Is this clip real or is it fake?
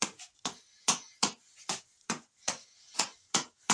fake